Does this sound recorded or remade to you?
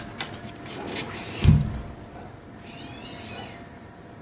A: recorded